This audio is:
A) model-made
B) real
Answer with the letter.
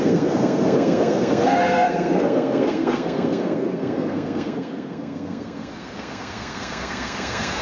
A